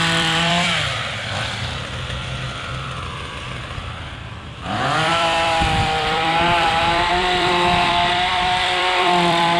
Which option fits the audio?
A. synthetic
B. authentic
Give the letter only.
A